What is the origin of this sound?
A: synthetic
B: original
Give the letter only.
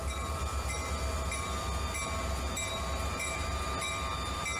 A